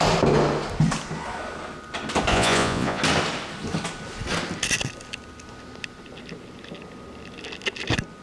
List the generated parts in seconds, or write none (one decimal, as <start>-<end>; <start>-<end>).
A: 2.3-3.0